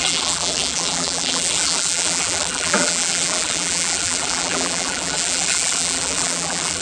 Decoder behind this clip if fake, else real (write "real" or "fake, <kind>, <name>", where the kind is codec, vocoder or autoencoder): fake, vocoder, BigVGAN v2